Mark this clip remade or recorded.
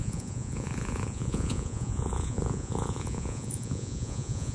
remade